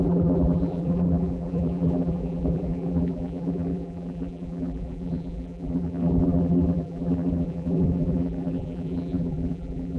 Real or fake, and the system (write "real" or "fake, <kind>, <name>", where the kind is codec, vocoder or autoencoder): fake, vocoder, BigVGAN v2